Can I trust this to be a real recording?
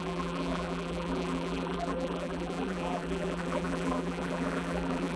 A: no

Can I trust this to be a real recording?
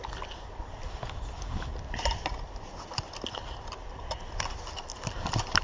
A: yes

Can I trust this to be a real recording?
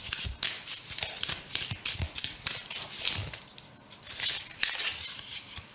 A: yes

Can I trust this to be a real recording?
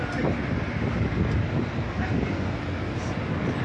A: yes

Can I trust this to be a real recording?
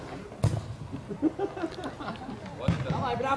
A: yes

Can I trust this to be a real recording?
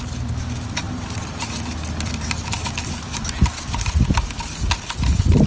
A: yes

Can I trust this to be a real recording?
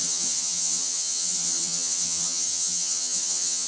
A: no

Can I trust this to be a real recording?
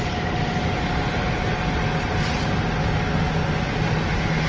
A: yes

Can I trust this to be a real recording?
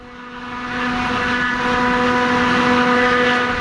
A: yes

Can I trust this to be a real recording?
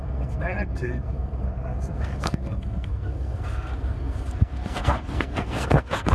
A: no